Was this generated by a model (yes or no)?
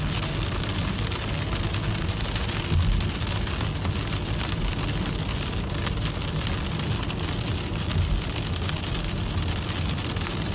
no